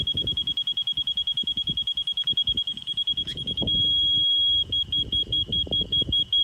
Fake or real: fake